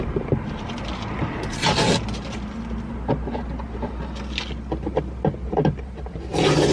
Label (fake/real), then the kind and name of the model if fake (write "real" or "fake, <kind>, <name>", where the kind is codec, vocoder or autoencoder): real